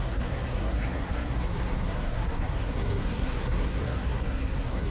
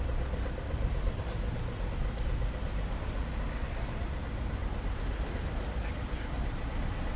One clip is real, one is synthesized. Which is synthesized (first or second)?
first